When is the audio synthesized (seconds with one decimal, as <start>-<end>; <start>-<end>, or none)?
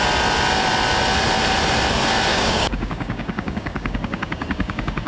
2.3-5.1